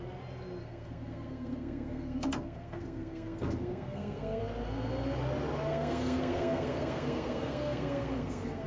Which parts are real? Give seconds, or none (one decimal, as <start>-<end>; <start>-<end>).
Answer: 0.0-0.6; 4.4-5.7